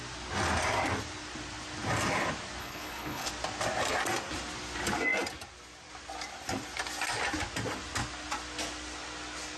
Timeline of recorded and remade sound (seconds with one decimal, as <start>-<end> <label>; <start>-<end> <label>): 0.0-2.6 recorded; 2.6-3.3 remade; 3.3-9.6 recorded